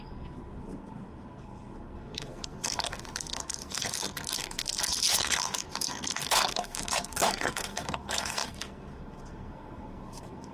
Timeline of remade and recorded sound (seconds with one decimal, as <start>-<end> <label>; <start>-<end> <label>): 0.0-10.5 remade